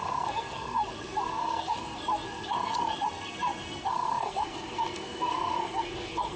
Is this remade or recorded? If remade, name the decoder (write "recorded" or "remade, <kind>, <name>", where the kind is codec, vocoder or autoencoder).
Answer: remade, codec, SNAC